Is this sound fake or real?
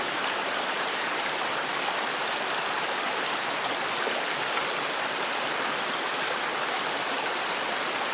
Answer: real